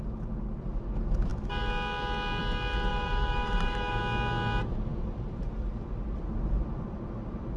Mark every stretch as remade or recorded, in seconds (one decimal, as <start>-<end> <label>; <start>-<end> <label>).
0.0-2.9 recorded; 2.9-4.0 remade; 4.0-7.6 recorded